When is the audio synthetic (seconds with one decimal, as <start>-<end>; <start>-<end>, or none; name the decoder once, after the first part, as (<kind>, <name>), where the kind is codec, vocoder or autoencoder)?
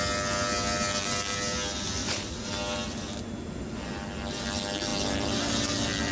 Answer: 2.0-2.5 (vocoder, Vocos)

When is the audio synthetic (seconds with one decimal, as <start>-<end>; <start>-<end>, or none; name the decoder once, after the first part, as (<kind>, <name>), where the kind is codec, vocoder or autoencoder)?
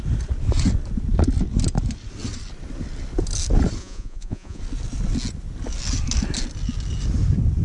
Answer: 3.8-4.6 (vocoder, Vocos)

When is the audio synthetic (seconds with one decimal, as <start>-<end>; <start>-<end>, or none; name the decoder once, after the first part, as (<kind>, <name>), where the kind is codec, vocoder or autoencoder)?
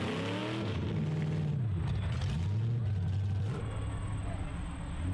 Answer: none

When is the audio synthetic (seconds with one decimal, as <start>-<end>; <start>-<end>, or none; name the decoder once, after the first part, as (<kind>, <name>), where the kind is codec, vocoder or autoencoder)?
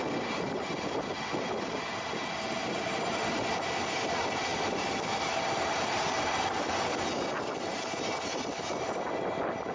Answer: none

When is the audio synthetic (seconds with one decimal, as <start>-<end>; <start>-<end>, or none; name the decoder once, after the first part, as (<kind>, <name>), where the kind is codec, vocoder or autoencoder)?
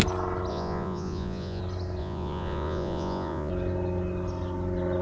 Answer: 0.5-1.6 (vocoder, Vocos); 2.0-3.5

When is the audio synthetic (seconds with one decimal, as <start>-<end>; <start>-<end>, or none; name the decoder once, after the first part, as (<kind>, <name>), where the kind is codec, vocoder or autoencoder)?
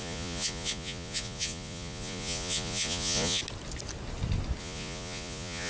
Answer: 0.0-3.4 (vocoder, Vocos); 4.6-5.7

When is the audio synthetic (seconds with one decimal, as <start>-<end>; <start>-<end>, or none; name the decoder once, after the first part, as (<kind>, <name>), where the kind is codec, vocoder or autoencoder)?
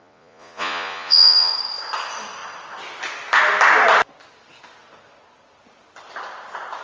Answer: 0.0-1.5 (vocoder, Vocos)